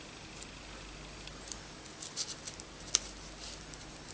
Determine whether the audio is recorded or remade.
recorded